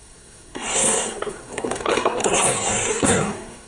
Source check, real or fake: fake